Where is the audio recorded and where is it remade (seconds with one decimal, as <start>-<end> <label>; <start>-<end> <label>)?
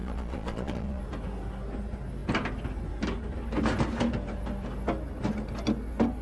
0.0-1.0 remade; 1.0-6.2 recorded